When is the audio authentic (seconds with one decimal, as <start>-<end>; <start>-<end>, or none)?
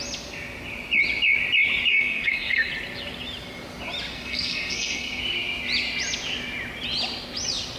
0.0-1.9; 2.7-4.1; 5.2-7.8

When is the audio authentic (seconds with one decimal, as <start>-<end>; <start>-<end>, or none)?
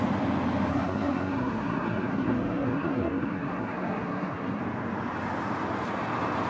0.0-0.7; 4.6-6.5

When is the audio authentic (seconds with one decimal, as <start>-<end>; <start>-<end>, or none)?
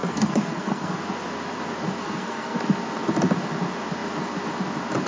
1.0-2.0; 2.6-5.1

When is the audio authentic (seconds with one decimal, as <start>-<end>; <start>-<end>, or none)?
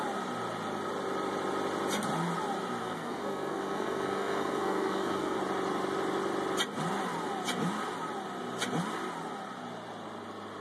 0.0-2.8; 5.4-10.6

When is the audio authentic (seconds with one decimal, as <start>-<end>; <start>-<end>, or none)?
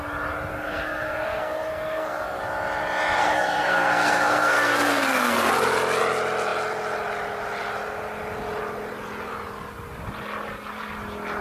0.0-0.5; 2.4-3.2; 5.5-11.4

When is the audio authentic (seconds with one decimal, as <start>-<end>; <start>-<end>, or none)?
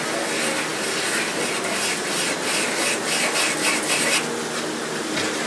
0.0-5.5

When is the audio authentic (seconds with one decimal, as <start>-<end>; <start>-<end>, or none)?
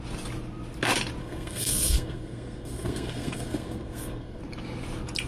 0.0-1.2; 4.4-5.3